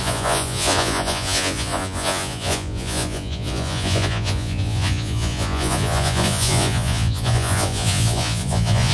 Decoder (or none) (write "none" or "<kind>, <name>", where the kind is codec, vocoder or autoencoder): vocoder, Vocos